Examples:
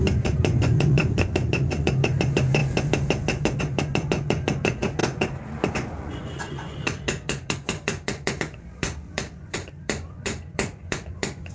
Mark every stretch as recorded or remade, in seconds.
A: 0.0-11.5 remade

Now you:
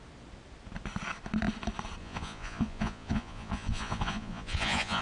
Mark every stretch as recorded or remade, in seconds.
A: 0.0-2.0 recorded; 2.0-5.0 remade

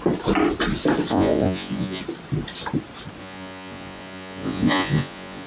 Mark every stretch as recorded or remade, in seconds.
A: 0.0-1.1 recorded; 1.1-2.0 remade; 2.0-3.2 recorded; 3.2-5.5 remade

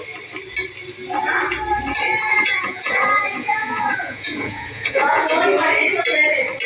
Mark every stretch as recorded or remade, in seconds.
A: 0.0-2.3 recorded; 2.3-5.4 remade; 5.4-6.7 recorded

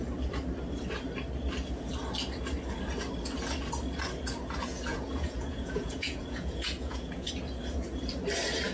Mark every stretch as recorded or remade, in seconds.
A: 0.0-4.9 recorded; 4.9-7.3 remade; 7.3-8.7 recorded

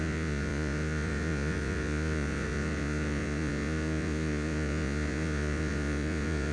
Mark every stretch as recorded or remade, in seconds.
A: 0.0-6.5 remade

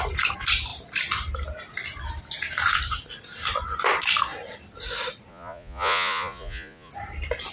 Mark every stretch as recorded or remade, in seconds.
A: 0.0-5.3 recorded; 5.3-6.9 remade; 6.9-7.5 recorded

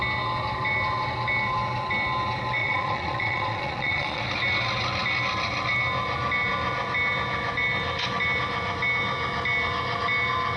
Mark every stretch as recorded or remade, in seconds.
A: 0.0-2.6 recorded; 2.6-4.2 remade; 4.2-10.6 recorded